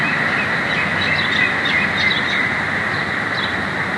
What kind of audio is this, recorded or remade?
recorded